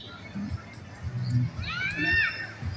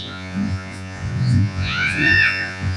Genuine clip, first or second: first